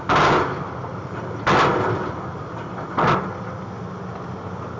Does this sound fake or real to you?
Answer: real